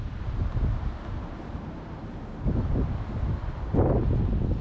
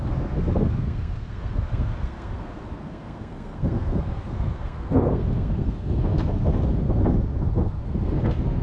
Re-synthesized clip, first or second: second